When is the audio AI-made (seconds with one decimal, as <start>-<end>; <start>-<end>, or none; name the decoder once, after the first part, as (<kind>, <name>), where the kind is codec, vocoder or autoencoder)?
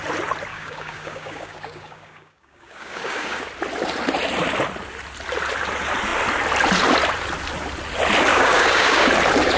0.5-3.5 (codec, DAC); 8.3-9.1